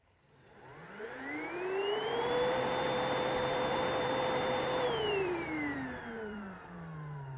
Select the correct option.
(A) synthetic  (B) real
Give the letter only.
A